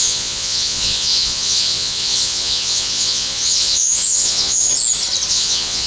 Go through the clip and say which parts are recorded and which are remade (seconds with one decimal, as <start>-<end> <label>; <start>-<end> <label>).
0.0-4.7 remade; 4.7-5.3 recorded; 5.3-5.9 remade